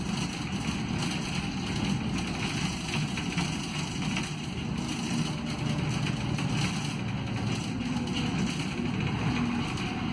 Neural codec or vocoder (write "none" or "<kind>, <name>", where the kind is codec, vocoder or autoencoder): none